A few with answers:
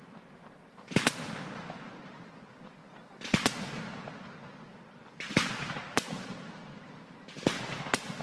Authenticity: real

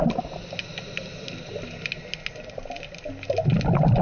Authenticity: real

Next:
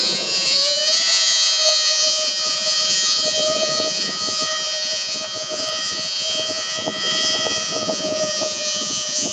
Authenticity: fake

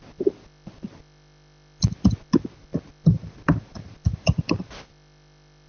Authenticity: real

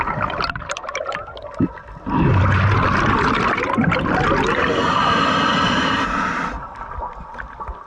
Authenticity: real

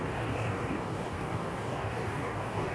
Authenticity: fake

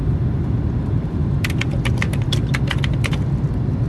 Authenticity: fake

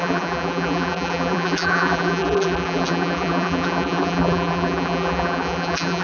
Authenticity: fake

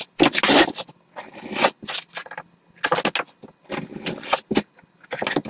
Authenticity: real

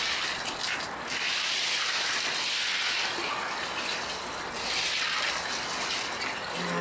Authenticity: real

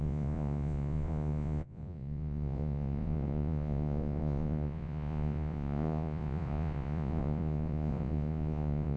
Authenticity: fake